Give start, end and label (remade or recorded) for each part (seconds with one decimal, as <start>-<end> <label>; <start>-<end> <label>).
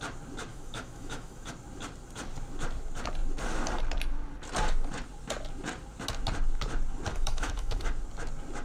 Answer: 0.0-0.5 recorded; 0.5-1.5 remade; 1.5-7.1 recorded; 7.1-7.9 remade; 7.9-8.6 recorded